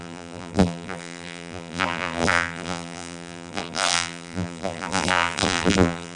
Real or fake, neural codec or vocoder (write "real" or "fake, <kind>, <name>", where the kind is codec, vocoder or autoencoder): fake, vocoder, BigVGAN v2